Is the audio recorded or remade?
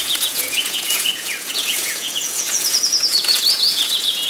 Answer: remade